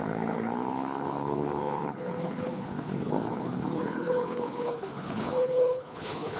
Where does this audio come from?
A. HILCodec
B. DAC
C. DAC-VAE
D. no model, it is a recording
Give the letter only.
A